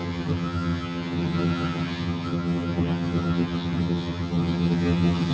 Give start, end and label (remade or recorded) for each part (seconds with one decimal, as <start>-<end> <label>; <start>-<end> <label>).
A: 0.0-5.3 remade